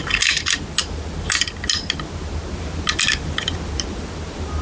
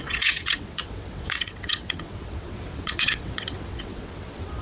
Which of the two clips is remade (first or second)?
second